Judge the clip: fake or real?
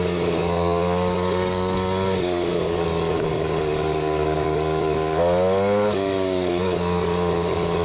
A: fake